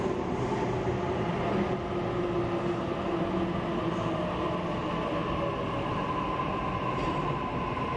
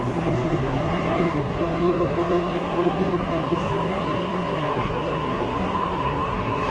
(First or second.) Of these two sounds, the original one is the first